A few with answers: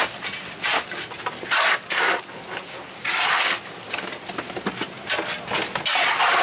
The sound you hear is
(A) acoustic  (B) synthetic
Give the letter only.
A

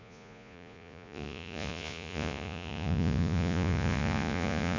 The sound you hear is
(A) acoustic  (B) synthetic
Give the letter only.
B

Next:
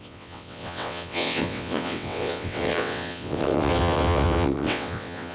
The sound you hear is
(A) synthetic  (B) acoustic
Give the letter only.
A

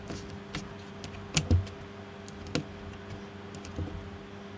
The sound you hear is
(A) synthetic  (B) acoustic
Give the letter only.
B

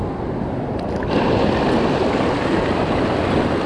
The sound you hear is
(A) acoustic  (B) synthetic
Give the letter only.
A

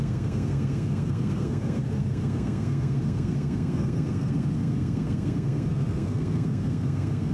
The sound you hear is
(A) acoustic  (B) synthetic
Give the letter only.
B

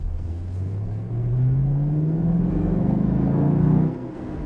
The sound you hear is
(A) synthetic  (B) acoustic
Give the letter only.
A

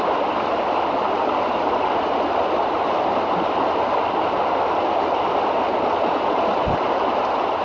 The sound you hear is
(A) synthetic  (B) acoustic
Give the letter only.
B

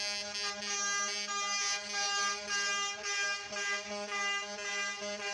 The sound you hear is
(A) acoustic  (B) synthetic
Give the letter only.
A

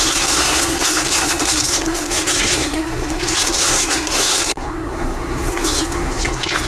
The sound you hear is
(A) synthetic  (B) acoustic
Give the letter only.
A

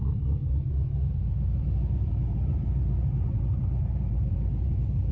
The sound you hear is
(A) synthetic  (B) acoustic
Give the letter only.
A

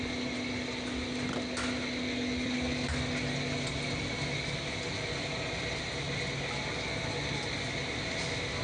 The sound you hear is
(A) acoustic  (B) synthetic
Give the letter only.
A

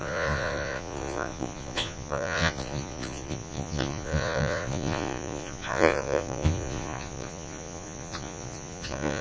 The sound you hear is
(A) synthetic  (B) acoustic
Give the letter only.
A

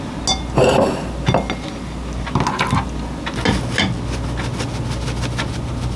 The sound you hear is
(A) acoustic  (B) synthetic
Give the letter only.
A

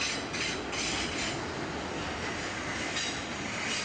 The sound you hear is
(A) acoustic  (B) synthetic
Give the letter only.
A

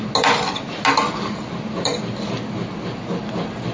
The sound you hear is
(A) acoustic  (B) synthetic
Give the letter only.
A